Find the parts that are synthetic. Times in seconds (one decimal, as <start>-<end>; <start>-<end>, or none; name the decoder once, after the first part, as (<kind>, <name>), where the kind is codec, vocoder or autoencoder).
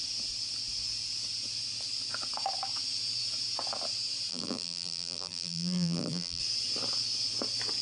4.3-6.4 (vocoder, BigVGAN v2)